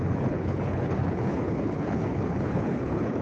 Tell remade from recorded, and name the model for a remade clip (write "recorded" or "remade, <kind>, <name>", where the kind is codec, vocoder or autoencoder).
remade, codec, HILCodec